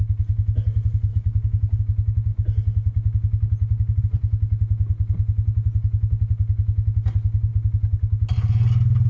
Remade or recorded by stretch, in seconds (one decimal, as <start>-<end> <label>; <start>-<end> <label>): 0.0-1.1 recorded; 1.1-1.8 remade; 1.8-9.1 recorded